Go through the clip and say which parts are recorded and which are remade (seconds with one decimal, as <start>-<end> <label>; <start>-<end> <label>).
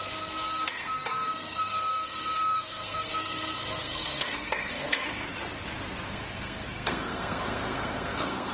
0.0-5.3 remade; 5.3-6.1 recorded; 6.1-8.5 remade